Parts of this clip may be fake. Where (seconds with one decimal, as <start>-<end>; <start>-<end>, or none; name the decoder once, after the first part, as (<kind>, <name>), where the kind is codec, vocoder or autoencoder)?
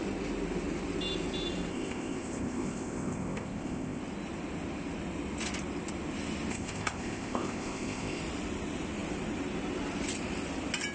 1.7-4.0 (codec, ZipCodec); 6.5-8.2